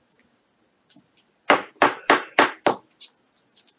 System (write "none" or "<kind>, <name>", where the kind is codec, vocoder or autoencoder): none